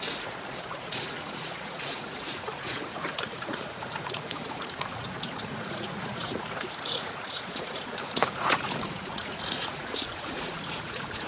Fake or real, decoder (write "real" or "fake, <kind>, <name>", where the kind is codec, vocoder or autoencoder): fake, vocoder, Vocos